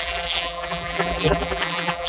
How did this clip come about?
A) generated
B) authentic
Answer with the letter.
A